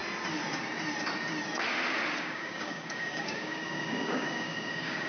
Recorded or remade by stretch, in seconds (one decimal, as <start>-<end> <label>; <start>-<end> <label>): 0.0-2.2 recorded; 2.2-5.1 remade